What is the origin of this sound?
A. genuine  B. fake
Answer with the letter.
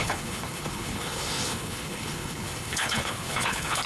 B